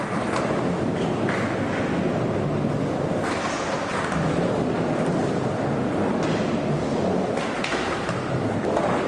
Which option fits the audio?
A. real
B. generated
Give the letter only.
A